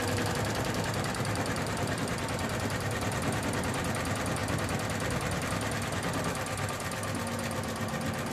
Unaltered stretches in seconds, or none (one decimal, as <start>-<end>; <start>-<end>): 0.0-0.5; 2.0-8.3